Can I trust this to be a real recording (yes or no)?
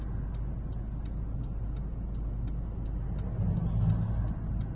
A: yes